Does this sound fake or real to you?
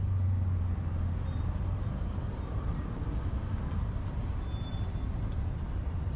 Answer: real